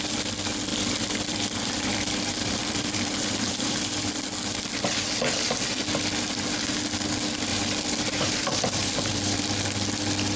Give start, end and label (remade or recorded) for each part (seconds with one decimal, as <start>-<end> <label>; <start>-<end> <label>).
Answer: 0.0-0.7 recorded; 0.7-4.1 remade; 4.1-7.5 recorded; 7.5-9.5 remade; 9.5-10.4 recorded